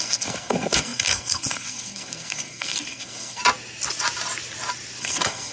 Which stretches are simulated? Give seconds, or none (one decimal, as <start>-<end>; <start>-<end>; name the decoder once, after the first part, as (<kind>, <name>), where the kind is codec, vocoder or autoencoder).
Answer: 0.0-3.4 (codec, SNAC); 5.0-5.5